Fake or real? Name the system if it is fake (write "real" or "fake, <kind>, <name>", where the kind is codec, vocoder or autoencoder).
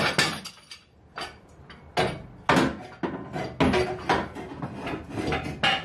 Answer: real